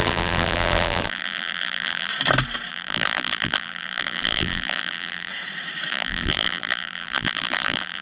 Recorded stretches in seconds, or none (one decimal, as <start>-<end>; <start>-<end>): 2.1-2.7; 5.3-5.9